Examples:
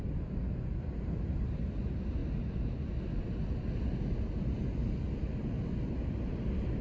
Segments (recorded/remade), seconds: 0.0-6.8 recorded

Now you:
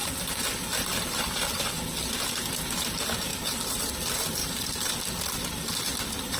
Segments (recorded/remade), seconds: 0.0-1.8 remade; 1.8-4.4 recorded; 4.4-4.9 remade; 4.9-6.4 recorded

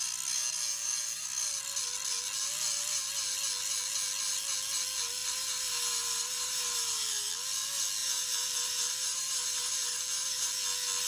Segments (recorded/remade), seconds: 0.0-5.2 recorded; 5.2-7.3 remade; 7.3-8.0 recorded; 8.0-10.5 remade; 10.5-11.1 recorded

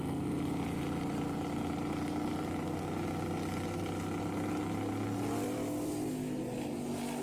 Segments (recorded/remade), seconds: 0.0-5.4 recorded; 5.4-6.1 remade; 6.1-7.2 recorded

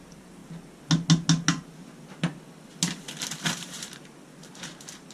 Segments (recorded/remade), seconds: 0.0-0.4 remade; 0.4-3.5 recorded; 3.5-5.1 remade

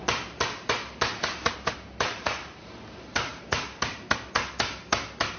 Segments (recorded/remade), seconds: 0.0-1.2 recorded; 1.2-2.8 remade; 2.8-3.3 recorded; 3.3-4.0 remade; 4.0-5.4 recorded

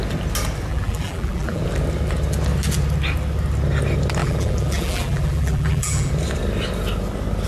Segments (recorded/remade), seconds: 0.0-0.7 recorded; 0.7-1.6 remade; 1.6-4.2 recorded; 4.2-6.1 remade; 6.1-7.5 recorded